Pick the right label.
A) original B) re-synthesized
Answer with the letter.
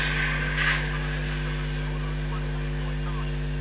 A